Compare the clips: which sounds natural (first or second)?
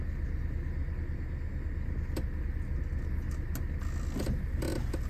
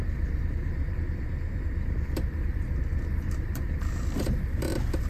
first